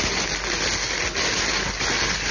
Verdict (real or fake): real